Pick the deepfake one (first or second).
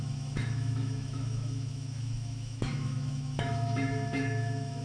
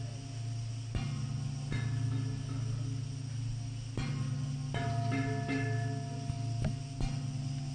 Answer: first